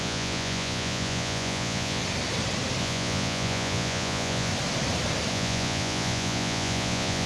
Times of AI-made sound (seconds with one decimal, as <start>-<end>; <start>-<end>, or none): 0.0-2.0; 2.8-4.5; 5.3-7.3